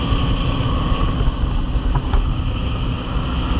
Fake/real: real